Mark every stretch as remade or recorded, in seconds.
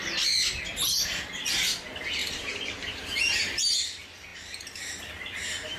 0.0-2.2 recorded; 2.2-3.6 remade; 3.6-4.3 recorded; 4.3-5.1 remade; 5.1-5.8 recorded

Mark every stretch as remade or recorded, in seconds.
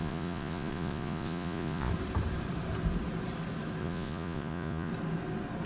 0.0-1.9 remade; 1.9-3.8 recorded; 3.8-4.9 remade; 4.9-5.7 recorded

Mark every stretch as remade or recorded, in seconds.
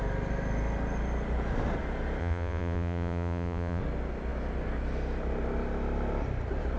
0.0-2.2 recorded; 2.2-3.8 remade; 3.8-6.8 recorded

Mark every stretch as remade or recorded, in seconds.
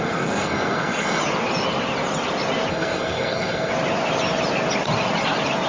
0.0-1.2 remade; 1.2-2.7 recorded; 2.7-3.7 remade; 3.7-5.7 recorded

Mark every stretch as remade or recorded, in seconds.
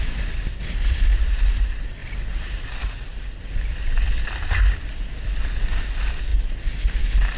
0.0-7.4 recorded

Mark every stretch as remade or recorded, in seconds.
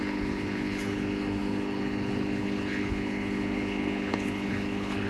0.0-5.1 remade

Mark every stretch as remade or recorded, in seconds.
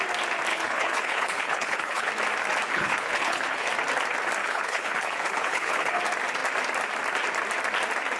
0.0-0.5 recorded; 0.5-2.1 remade; 2.1-2.7 recorded; 2.7-3.7 remade; 3.7-4.4 recorded; 4.4-6.0 remade; 6.0-8.2 recorded